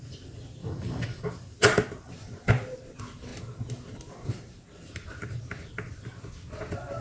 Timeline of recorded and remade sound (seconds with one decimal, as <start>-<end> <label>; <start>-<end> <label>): 0.0-0.6 recorded; 0.6-1.3 remade; 1.3-7.0 recorded